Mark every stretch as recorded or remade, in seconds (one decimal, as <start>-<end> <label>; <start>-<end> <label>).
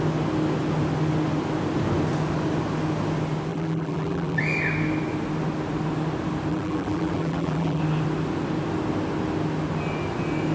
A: 0.0-3.5 recorded; 3.5-4.4 remade; 4.4-6.5 recorded; 6.5-7.8 remade; 7.8-10.5 recorded